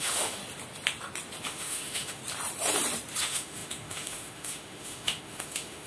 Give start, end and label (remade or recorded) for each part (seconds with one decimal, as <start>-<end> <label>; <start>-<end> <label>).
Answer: 0.0-0.4 remade; 0.4-1.4 recorded; 1.4-2.2 remade; 2.2-3.2 recorded; 3.2-5.9 remade